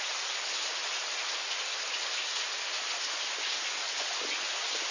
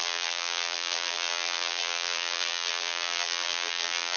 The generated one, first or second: second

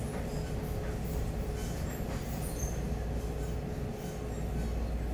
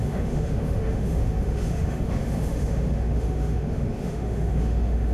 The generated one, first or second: second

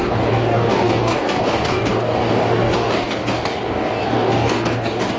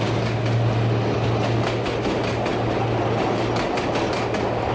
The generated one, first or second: first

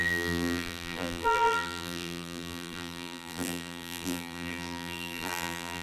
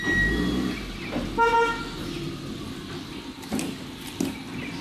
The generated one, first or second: first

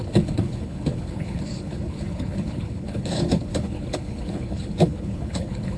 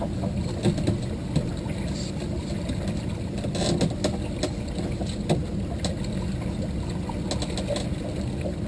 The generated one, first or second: first